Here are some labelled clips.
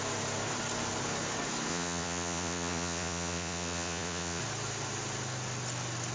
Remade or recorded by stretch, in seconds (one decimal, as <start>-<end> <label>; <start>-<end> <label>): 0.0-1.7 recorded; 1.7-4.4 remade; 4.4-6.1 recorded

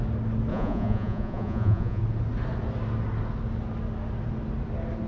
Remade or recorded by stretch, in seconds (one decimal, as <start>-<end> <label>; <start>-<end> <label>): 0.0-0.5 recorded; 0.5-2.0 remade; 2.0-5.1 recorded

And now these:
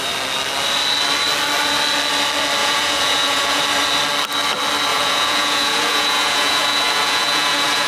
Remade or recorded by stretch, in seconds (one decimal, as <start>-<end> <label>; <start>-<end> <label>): 0.0-2.6 recorded; 2.6-3.6 remade; 3.6-4.9 recorded; 4.9-7.9 remade

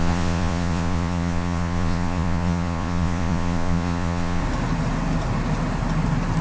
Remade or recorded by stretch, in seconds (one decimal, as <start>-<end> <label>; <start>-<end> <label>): 0.0-4.4 remade; 4.4-6.4 recorded

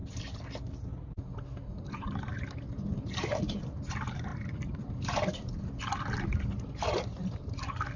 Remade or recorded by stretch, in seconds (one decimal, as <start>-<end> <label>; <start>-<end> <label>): 0.0-8.0 recorded